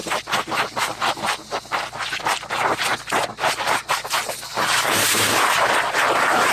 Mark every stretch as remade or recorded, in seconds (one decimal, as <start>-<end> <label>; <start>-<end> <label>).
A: 0.0-6.5 recorded